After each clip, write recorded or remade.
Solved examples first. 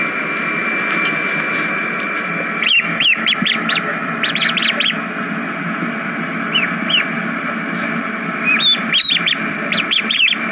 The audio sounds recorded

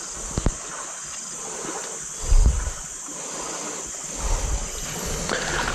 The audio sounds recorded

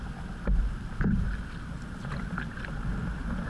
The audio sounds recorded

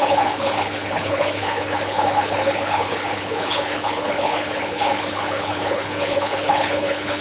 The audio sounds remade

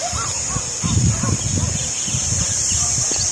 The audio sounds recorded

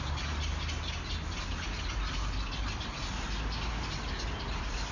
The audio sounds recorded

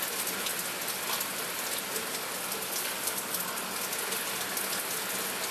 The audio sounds recorded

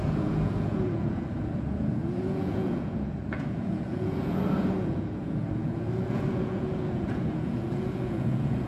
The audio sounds remade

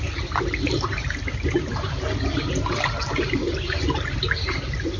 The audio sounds recorded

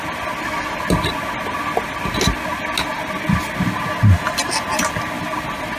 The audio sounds recorded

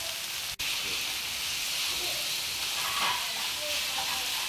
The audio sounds recorded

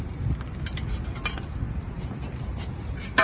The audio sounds recorded